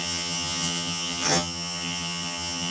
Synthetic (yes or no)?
yes